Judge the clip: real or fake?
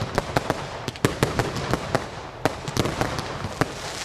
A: real